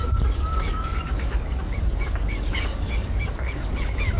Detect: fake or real fake